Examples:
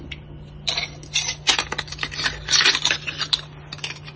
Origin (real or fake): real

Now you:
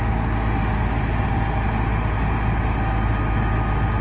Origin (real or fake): real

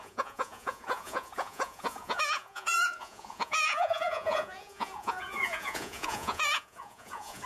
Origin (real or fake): fake